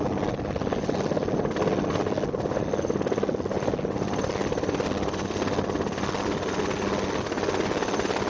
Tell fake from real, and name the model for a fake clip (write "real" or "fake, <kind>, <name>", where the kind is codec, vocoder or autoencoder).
real